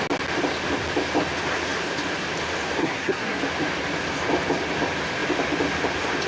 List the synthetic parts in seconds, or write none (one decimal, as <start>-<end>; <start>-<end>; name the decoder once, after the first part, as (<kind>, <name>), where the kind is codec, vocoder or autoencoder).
2.8-3.4 (codec, SNAC)